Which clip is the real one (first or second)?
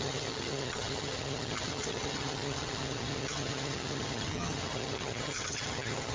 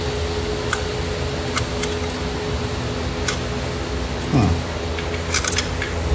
second